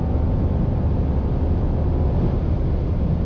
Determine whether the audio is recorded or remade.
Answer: recorded